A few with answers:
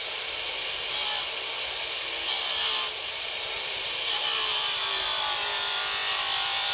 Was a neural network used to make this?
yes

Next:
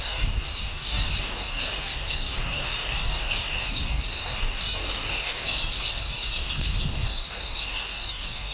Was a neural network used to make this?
yes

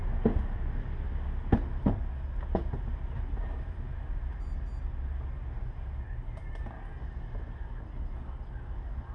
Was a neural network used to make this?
no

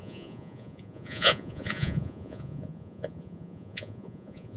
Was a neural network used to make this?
yes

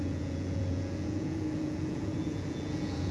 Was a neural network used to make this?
yes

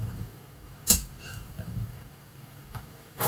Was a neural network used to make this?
yes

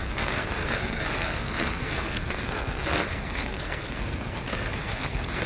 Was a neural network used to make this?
yes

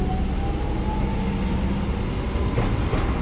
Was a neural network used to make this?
no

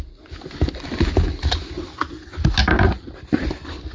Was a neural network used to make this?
no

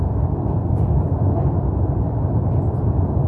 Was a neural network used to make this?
no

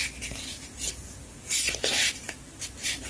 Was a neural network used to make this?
no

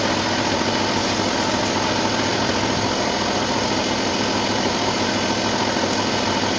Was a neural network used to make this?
no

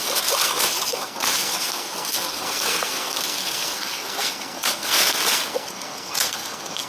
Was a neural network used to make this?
yes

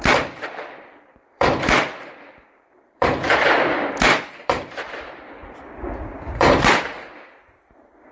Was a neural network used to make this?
yes